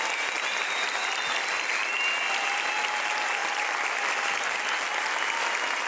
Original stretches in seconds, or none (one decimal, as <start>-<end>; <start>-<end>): 0.0-5.9